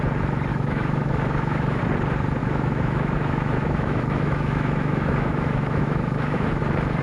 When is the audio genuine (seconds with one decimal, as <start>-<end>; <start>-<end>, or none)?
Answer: 0.0-0.5; 1.8-2.4; 6.6-7.0